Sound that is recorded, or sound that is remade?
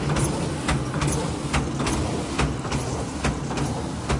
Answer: recorded